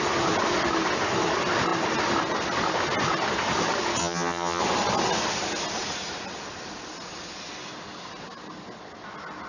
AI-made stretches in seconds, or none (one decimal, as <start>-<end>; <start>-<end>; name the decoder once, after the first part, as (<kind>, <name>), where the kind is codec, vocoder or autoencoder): 4.0-4.6 (vocoder, HiFi-GAN)